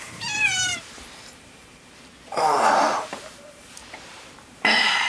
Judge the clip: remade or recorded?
remade